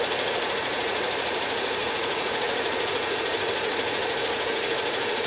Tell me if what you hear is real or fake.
fake